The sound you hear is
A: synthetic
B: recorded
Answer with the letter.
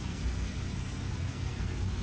A